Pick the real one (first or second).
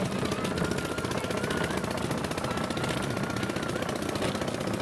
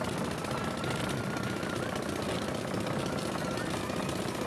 first